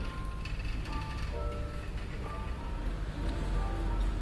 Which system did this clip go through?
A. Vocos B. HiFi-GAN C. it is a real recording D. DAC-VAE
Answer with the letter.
C